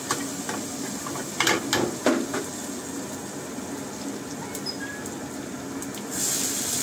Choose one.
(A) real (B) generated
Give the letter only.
A